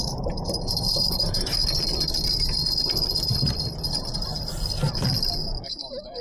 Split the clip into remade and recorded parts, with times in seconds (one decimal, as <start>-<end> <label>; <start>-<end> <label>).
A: 0.0-1.6 remade; 1.6-5.3 recorded; 5.3-6.2 remade